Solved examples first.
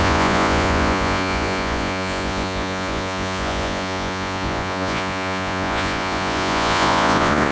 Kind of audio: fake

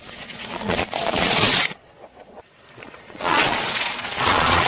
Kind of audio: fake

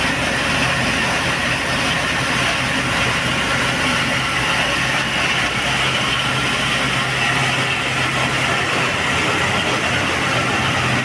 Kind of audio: real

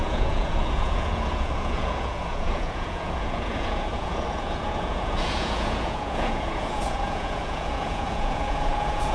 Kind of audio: fake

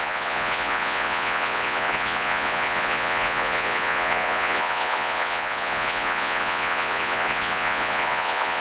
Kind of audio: fake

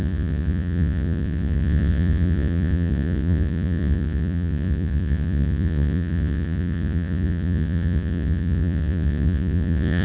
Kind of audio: fake